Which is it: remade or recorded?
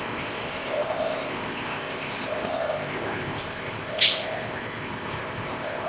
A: remade